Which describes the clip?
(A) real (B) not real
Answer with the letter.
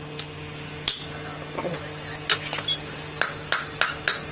A